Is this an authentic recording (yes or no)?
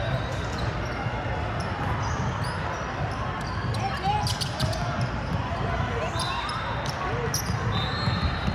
yes